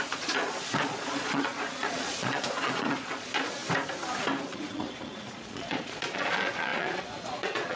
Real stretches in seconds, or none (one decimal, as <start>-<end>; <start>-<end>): 3.6-4.4